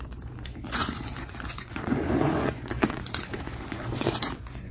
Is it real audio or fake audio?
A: fake